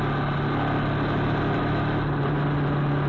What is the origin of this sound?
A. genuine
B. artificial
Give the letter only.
A